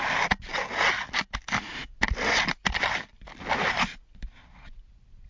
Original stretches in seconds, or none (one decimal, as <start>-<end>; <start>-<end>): 0.0-5.3